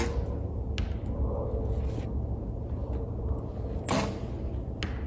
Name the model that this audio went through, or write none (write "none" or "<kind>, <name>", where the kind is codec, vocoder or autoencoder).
none